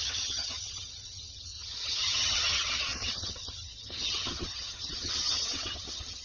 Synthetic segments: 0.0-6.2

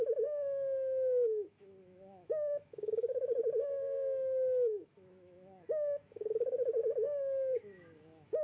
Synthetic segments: 0.0-8.4

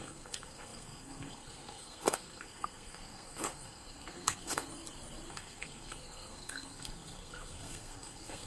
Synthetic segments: 0.0-4.7; 5.3-8.5